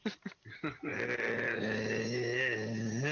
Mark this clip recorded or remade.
recorded